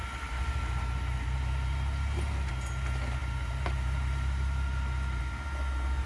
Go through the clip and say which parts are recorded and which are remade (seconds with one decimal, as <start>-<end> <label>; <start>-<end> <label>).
0.0-2.5 remade; 2.5-3.2 recorded; 3.2-5.2 remade; 5.2-6.1 recorded